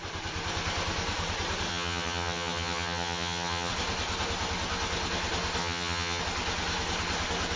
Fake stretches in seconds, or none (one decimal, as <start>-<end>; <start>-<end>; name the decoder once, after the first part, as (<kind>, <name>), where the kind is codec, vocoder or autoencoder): 1.7-3.7 (vocoder, HiFi-GAN); 5.6-6.2